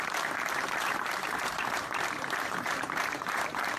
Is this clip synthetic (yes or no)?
yes